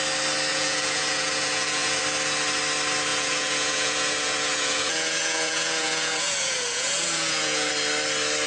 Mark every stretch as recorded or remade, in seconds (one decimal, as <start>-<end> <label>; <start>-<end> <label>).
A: 0.0-0.5 recorded; 0.5-2.0 remade; 2.0-3.1 recorded; 3.1-7.7 remade; 7.7-8.5 recorded